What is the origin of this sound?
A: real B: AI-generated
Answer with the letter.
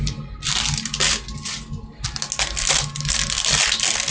A